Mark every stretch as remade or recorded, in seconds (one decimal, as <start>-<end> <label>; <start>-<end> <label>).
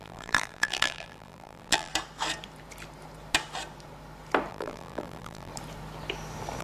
0.0-1.9 remade; 1.9-4.5 recorded; 4.5-5.5 remade; 5.5-6.6 recorded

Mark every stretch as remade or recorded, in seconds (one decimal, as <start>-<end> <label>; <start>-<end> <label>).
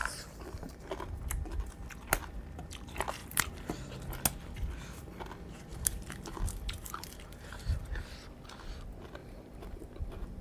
0.0-0.8 remade; 0.8-3.2 recorded; 3.2-4.0 remade; 4.0-5.7 recorded; 5.7-7.8 remade; 7.8-9.2 recorded; 9.2-10.4 remade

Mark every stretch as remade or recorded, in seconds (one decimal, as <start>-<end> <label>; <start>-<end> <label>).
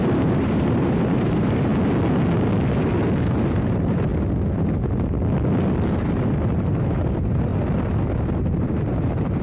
0.0-1.7 remade; 1.7-3.2 recorded; 3.2-4.1 remade; 4.1-5.9 recorded; 5.9-7.5 remade; 7.5-8.2 recorded; 8.2-9.4 remade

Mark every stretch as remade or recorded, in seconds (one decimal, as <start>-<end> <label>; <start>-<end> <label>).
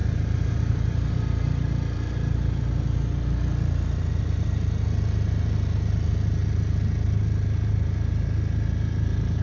0.0-0.7 remade; 0.7-9.4 recorded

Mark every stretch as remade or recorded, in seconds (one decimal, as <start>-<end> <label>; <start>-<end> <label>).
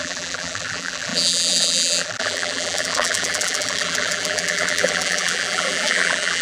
0.0-6.4 remade